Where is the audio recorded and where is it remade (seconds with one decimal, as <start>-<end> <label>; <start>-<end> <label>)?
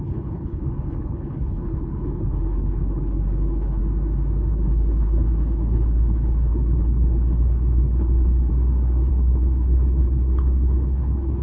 0.0-3.8 remade; 3.8-4.5 recorded; 4.5-8.5 remade; 8.5-9.1 recorded; 9.1-11.4 remade